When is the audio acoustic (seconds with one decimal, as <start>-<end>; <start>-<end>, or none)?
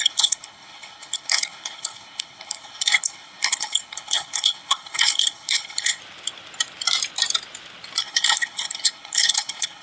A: 6.0-8.0